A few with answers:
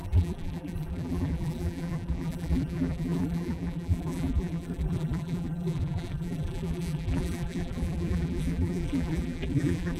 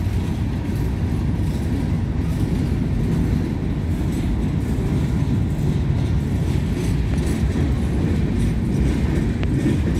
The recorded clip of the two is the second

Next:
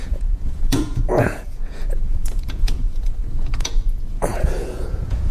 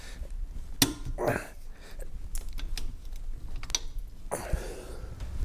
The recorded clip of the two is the second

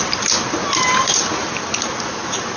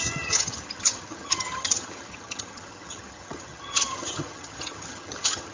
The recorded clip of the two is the first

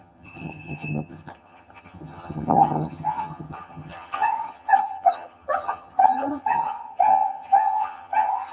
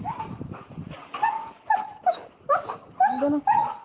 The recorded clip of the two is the second